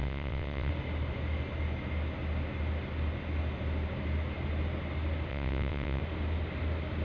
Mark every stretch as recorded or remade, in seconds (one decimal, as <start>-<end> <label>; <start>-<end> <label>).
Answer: 0.0-0.7 remade; 0.7-5.3 recorded; 5.3-6.0 remade; 6.0-7.0 recorded